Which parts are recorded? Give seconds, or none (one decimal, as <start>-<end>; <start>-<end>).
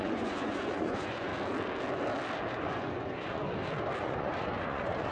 1.3-2.5; 3.4-4.0